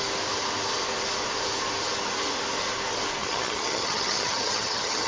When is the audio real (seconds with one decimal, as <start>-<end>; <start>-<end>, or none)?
0.0-3.2